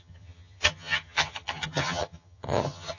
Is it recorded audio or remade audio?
remade